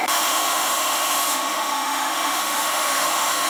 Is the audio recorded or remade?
remade